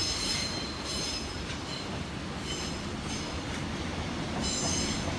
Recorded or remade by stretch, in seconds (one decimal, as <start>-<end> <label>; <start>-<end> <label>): 0.0-1.5 remade; 1.5-5.2 recorded